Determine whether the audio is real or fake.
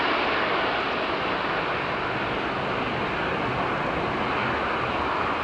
real